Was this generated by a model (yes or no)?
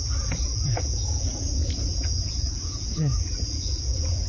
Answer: yes